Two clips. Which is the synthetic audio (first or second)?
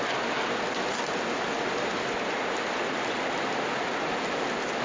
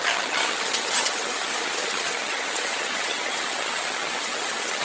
second